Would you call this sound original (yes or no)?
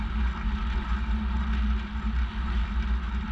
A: yes